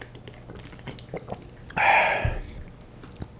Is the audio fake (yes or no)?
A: no